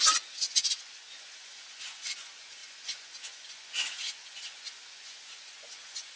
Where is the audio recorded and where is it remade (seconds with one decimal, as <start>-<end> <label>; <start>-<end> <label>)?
0.0-6.2 remade